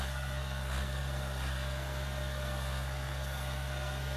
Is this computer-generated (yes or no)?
yes